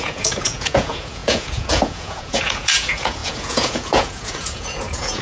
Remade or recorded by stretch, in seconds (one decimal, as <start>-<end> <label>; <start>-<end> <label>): 0.0-5.2 remade